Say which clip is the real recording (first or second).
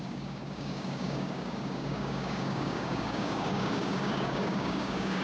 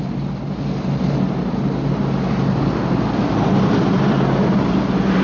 second